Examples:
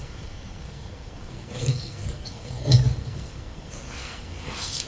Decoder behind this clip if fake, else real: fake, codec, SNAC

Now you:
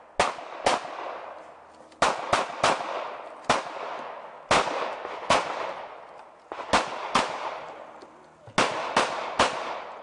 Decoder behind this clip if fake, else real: real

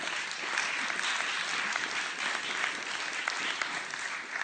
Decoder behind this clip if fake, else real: real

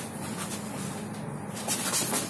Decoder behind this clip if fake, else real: real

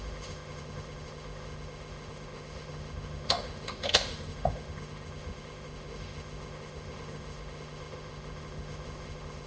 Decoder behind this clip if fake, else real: fake, autoencoder, DAC-VAE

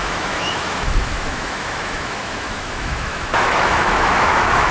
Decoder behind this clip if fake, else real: fake, autoencoder, DAC-VAE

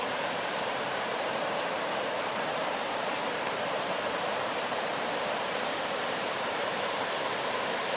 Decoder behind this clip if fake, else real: fake, vocoder, BigVGAN v2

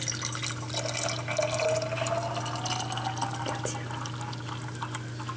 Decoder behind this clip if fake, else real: real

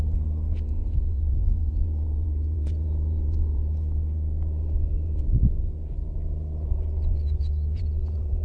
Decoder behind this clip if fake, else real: fake, vocoder, Vocos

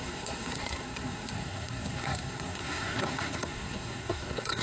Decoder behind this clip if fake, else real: fake, codec, SNAC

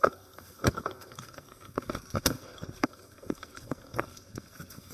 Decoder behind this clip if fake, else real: fake, codec, SNAC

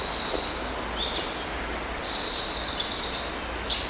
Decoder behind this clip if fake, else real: real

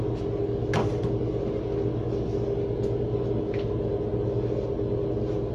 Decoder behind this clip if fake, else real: real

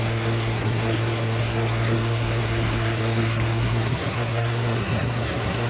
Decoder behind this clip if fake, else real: fake, codec, SNAC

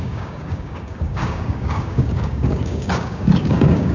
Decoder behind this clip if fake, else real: fake, codec, DAC